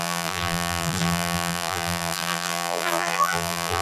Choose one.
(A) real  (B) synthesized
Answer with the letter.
B